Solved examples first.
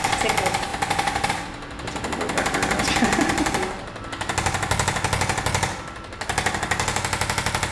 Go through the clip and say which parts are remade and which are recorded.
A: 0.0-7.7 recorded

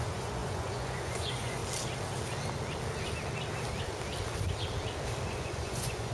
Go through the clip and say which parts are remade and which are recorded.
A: 0.0-1.6 remade; 1.6-5.3 recorded; 5.3-6.1 remade

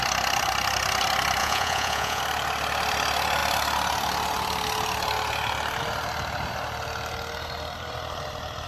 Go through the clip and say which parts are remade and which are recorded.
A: 0.0-1.4 recorded; 1.4-2.2 remade; 2.2-8.7 recorded

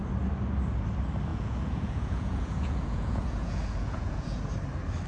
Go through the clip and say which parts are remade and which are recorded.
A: 0.0-1.3 recorded; 1.3-4.4 remade; 4.4-5.1 recorded

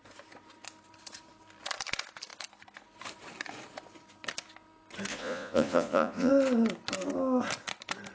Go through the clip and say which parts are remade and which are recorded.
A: 0.0-5.1 recorded; 5.1-6.3 remade; 6.3-8.1 recorded

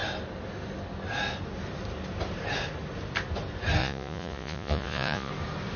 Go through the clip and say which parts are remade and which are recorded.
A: 0.0-3.8 recorded; 3.8-5.3 remade; 5.3-5.8 recorded